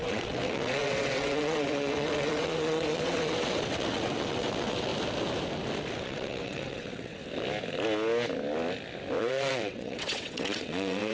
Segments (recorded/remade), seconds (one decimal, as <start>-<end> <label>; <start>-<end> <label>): 0.0-4.9 remade; 4.9-5.9 recorded; 5.9-7.2 remade; 7.2-9.2 recorded; 9.2-11.1 remade